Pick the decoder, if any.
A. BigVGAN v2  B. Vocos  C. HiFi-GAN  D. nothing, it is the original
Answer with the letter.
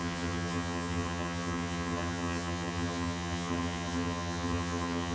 C